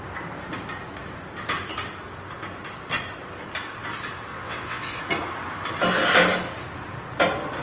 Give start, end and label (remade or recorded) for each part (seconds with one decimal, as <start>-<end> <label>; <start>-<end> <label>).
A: 0.0-4.3 recorded; 4.3-5.0 remade; 5.0-7.6 recorded